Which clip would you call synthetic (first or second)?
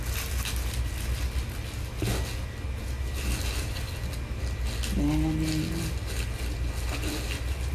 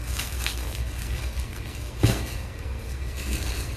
second